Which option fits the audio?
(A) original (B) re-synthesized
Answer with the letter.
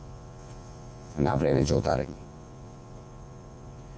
B